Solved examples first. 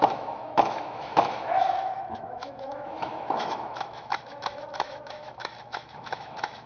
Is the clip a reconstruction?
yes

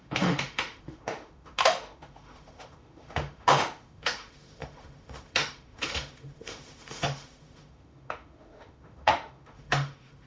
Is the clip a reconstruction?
yes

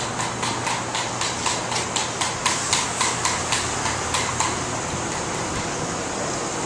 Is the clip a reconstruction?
no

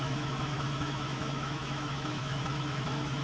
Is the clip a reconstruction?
yes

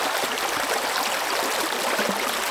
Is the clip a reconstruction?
no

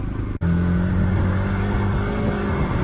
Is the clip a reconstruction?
no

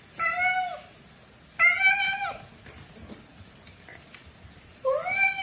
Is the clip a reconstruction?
no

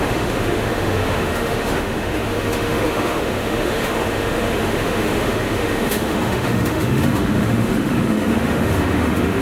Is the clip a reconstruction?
yes